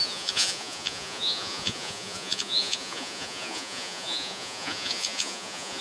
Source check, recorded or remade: remade